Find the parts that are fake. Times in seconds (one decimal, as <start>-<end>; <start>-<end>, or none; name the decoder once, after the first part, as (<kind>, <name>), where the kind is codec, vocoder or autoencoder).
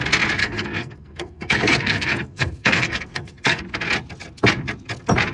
0.4-3.6 (codec, SNAC)